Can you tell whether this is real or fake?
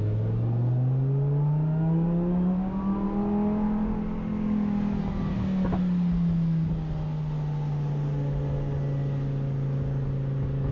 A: real